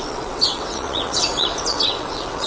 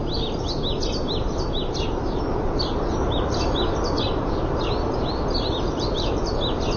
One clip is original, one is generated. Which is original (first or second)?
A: second